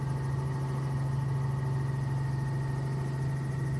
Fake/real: real